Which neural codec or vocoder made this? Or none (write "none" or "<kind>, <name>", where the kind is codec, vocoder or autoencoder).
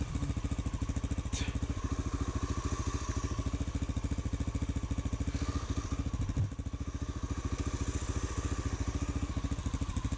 none